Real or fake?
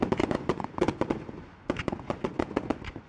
fake